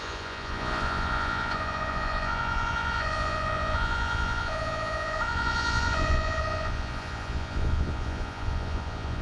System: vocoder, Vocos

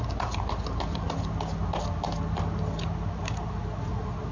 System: none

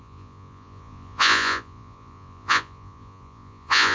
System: vocoder, Vocos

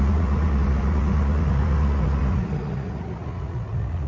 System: vocoder, Vocos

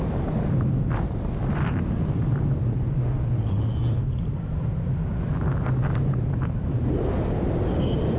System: none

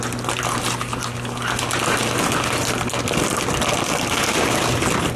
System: none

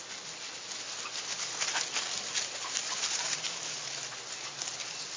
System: none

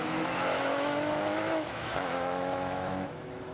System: autoencoder, DAC-VAE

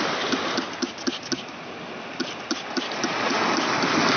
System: none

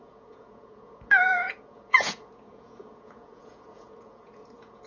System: vocoder, Vocos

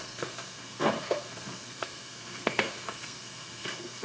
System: codec, SNAC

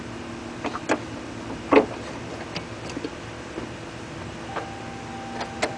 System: vocoder, BigVGAN v2